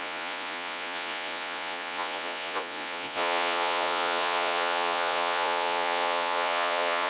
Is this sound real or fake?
fake